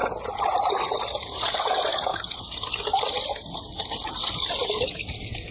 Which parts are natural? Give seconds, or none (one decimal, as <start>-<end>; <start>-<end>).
0.0-5.5